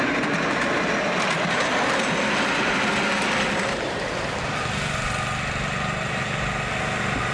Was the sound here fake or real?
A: real